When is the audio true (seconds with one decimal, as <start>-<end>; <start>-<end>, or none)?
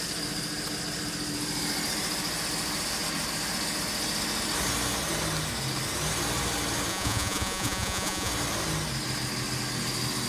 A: 0.0-6.9; 8.3-10.3